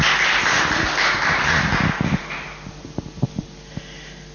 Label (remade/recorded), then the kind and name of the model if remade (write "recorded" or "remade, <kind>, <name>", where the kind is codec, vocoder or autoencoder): recorded